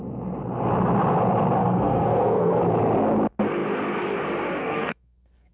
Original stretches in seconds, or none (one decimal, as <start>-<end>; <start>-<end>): 0.0-1.6; 2.6-4.6